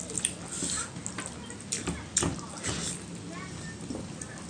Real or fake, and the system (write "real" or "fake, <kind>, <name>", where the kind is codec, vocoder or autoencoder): real